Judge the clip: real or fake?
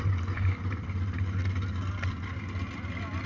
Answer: real